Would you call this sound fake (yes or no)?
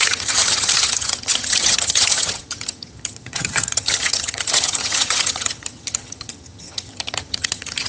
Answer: yes